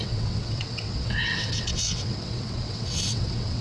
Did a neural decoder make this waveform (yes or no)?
yes